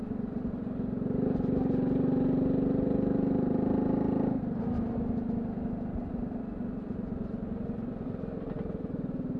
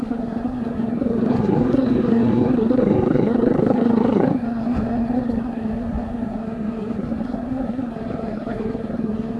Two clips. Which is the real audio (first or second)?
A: first